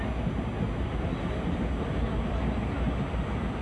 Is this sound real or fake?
real